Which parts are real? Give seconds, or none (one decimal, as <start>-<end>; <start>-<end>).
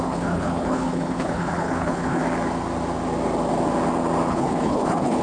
2.2-4.3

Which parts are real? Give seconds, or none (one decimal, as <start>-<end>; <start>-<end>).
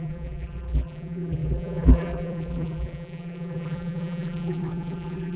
none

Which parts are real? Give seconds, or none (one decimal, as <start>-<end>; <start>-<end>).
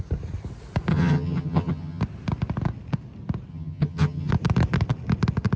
0.0-0.9; 2.0-3.5; 4.3-5.6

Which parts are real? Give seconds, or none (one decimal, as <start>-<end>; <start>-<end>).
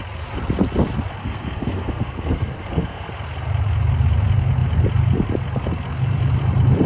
0.0-1.2; 3.1-6.9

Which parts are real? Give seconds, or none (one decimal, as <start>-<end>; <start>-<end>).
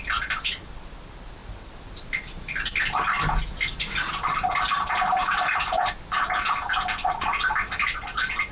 0.0-8.5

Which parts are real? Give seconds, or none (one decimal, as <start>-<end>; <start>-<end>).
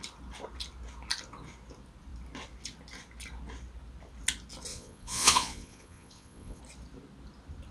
0.0-4.7; 6.6-7.7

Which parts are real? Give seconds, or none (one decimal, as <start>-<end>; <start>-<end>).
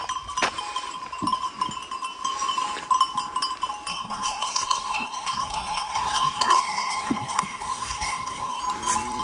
0.0-3.9; 8.6-9.2